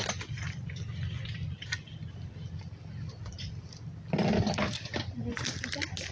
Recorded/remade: recorded